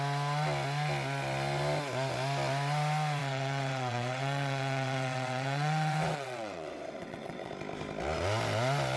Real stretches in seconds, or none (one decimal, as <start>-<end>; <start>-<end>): 0.0-3.2; 7.5-9.0